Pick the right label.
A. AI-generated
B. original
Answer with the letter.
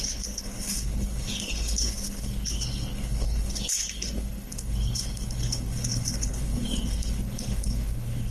A